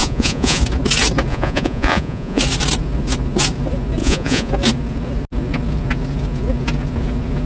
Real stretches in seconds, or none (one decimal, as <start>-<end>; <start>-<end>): 0.6-1.3; 2.4-4.0; 4.5-7.5